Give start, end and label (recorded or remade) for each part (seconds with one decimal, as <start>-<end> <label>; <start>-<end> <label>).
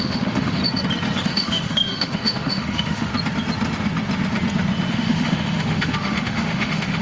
0.0-0.6 remade; 0.6-1.2 recorded; 1.2-3.1 remade; 3.1-4.9 recorded; 4.9-7.0 remade